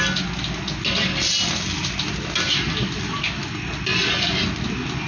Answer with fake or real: real